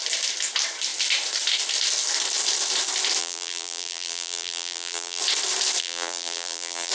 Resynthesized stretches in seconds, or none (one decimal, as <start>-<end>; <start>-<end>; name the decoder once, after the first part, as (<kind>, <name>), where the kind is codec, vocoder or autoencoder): 3.2-5.2 (vocoder, BigVGAN v2); 5.8-6.9